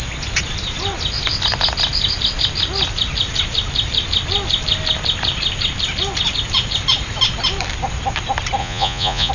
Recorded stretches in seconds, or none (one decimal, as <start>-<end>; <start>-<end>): 0.0-8.6